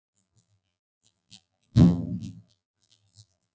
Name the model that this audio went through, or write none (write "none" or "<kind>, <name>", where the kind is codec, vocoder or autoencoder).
vocoder, BigVGAN v2